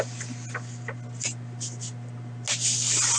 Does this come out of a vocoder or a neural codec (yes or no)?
no